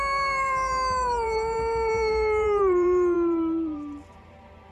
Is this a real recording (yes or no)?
no